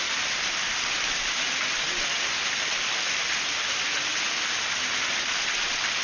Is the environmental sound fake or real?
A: real